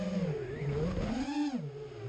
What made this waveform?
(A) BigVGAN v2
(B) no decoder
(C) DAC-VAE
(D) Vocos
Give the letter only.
B